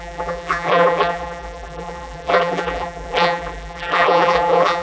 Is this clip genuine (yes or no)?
no